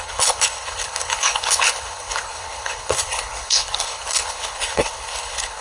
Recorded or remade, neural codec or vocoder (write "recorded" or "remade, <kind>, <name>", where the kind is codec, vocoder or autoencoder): remade, codec, HILCodec